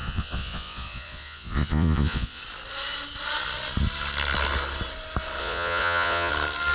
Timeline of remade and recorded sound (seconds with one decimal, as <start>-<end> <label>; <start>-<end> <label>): 0.0-2.4 remade; 2.4-5.4 recorded; 5.4-6.3 remade; 6.3-6.7 recorded